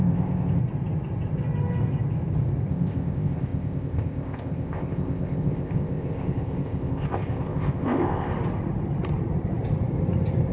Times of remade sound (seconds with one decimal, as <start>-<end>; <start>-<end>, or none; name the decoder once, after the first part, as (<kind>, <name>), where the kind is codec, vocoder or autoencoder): 0.0-0.6 (codec, ZipCodec); 2.7-8.3